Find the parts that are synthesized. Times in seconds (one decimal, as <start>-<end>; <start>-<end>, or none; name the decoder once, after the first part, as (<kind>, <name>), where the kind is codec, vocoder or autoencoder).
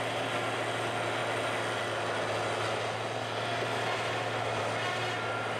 none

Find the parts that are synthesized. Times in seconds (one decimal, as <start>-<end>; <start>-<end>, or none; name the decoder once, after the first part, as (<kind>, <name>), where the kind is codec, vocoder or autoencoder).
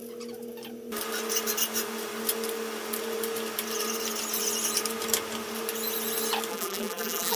6.5-7.4 (vocoder, BigVGAN v2)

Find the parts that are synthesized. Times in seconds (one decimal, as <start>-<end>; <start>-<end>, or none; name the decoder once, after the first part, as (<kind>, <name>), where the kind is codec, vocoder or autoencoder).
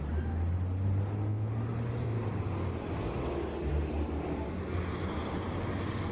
none